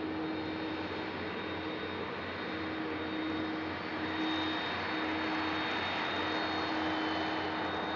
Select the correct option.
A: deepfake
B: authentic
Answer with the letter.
B